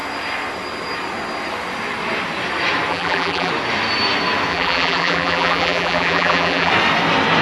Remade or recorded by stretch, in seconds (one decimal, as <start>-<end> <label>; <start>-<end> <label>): 0.0-2.9 recorded; 2.9-3.5 remade; 3.5-4.5 recorded; 4.5-6.7 remade; 6.7-7.4 recorded

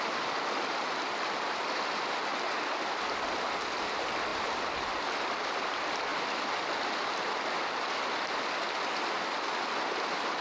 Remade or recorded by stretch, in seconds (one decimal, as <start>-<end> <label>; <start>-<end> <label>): 0.0-2.3 remade; 2.3-2.9 recorded; 2.9-6.1 remade; 6.1-9.9 recorded; 9.9-10.4 remade

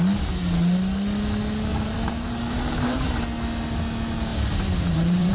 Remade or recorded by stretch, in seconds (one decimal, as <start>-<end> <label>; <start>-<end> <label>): 0.0-1.7 recorded; 1.7-3.2 remade; 3.2-4.3 recorded; 4.3-5.3 remade